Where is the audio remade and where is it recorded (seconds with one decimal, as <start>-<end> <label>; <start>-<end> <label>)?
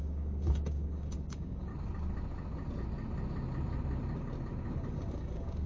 0.0-1.7 remade; 1.7-4.9 recorded; 4.9-5.7 remade